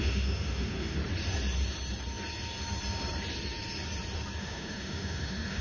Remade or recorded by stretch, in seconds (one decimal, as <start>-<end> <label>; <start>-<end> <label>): 0.0-1.0 remade; 1.0-4.4 recorded; 4.4-5.6 remade